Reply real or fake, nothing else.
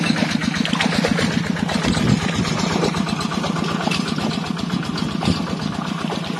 real